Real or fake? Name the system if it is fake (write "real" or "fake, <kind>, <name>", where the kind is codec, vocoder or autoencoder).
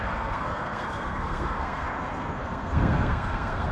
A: fake, codec, SNAC